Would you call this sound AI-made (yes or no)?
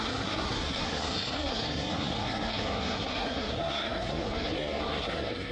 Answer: yes